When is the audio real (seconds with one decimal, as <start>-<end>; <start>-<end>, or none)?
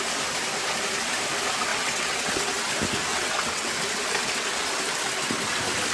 0.0-1.7; 2.5-3.1; 3.7-5.9